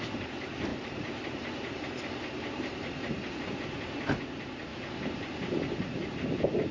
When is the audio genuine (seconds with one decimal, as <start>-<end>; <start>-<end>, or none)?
0.0-0.7; 3.3-4.7; 6.1-6.7